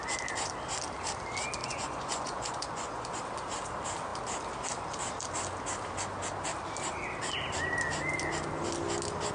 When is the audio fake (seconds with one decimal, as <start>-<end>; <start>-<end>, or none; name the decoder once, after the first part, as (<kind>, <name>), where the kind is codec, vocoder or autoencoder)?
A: 1.6-3.2 (vocoder, Vocos)